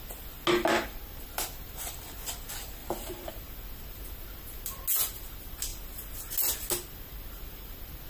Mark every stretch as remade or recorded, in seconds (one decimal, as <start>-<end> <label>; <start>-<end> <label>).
0.0-2.8 recorded; 2.8-3.3 remade; 3.3-8.1 recorded